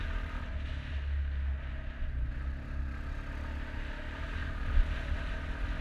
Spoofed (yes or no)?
no